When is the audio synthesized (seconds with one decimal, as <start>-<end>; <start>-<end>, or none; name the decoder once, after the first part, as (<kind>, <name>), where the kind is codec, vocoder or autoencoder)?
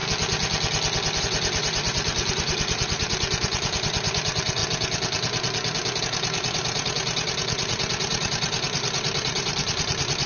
1.2-4.6 (vocoder, BigVGAN v2); 6.0-10.3